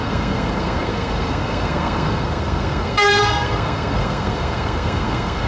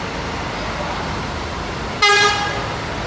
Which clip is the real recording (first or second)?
second